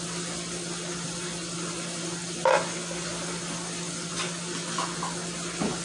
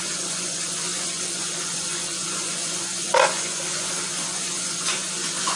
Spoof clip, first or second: second